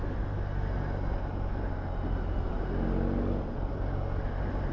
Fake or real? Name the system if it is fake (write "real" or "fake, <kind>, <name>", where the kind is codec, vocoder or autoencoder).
real